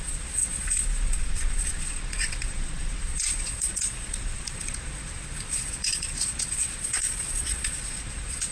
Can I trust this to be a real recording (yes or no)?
no